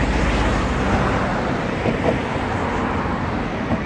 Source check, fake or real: real